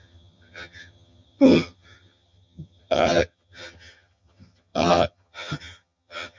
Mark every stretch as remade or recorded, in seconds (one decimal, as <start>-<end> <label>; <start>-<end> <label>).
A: 0.0-6.4 remade